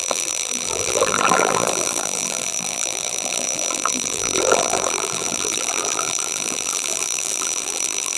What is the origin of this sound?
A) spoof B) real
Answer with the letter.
A